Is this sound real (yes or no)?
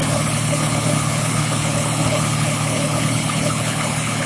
no